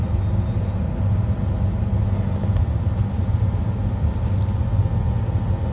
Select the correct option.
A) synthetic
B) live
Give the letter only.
B